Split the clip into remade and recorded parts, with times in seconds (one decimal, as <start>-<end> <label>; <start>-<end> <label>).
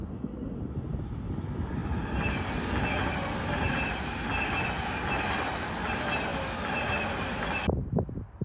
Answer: 0.0-8.4 recorded